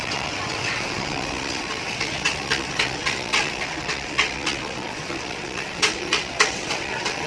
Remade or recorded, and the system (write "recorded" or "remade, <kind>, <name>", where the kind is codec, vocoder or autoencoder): remade, vocoder, WaveNeXt